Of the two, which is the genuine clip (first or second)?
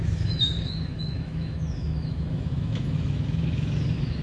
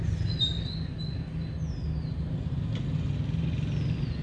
second